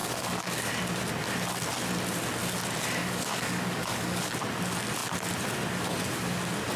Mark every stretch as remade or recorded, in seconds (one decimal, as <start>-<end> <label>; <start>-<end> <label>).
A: 0.0-0.7 remade; 0.7-3.0 recorded; 3.0-4.3 remade; 4.3-6.8 recorded